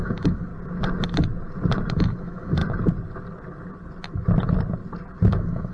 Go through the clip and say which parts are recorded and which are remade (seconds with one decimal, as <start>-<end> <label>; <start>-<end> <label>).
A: 0.0-0.5 remade; 0.5-1.9 recorded; 1.9-2.6 remade; 2.6-5.3 recorded; 5.3-5.7 remade